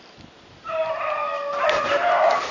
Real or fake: real